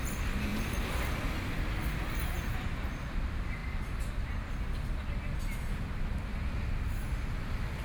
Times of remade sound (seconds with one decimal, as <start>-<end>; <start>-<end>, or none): 3.6-4.3